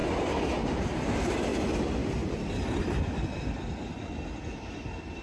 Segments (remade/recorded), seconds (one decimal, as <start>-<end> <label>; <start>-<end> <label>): 0.0-1.5 recorded; 1.5-2.8 remade; 2.8-5.2 recorded